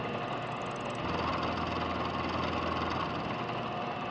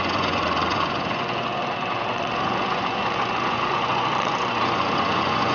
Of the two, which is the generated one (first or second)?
second